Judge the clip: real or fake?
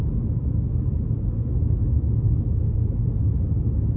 fake